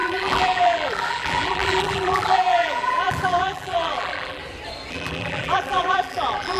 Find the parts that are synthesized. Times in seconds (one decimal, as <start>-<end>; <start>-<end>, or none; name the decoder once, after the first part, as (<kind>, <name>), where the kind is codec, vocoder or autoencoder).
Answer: 0.0-4.4 (vocoder, BigVGAN v2); 4.9-6.6